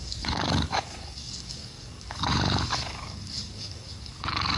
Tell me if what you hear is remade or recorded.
remade